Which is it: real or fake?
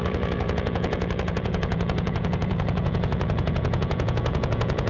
fake